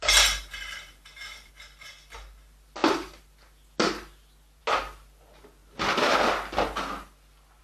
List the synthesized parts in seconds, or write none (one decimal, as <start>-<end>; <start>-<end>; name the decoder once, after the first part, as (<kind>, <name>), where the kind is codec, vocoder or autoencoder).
0.0-1.5 (vocoder, BigVGAN v2)